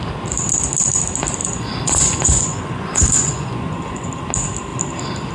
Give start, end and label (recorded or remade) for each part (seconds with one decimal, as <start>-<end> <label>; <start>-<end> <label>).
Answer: 0.0-1.4 recorded; 1.4-4.1 remade; 4.1-5.3 recorded